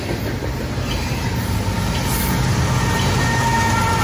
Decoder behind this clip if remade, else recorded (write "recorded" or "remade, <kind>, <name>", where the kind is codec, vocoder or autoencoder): recorded